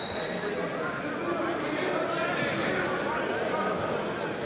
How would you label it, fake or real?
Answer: real